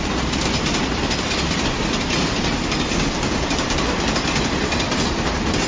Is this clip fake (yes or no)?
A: no